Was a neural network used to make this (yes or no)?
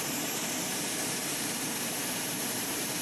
yes